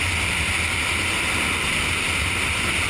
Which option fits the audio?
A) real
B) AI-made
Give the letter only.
A